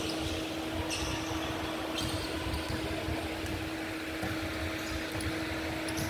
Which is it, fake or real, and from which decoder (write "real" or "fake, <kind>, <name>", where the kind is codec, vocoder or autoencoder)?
real